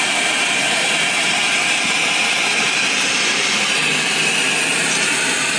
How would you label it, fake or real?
real